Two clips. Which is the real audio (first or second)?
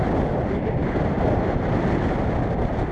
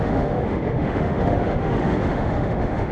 first